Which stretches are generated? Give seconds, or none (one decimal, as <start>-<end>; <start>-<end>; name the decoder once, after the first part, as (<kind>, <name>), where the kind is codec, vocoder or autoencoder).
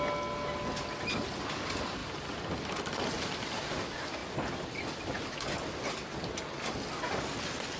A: none